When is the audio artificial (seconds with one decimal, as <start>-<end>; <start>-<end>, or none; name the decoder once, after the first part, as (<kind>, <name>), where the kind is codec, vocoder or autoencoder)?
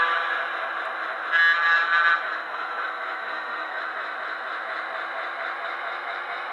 2.4-3.8 (codec, SNAC)